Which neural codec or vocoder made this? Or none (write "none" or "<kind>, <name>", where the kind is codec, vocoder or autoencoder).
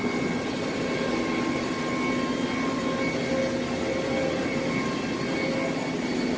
none